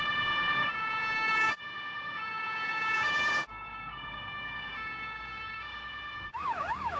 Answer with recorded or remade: remade